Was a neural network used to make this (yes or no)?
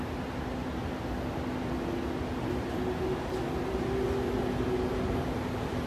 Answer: no